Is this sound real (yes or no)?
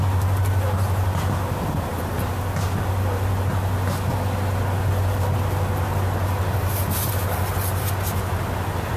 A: yes